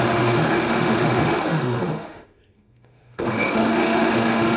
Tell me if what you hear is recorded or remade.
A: remade